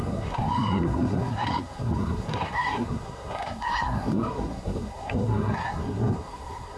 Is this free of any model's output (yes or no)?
no